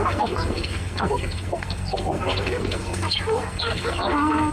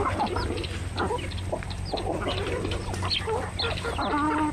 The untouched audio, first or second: second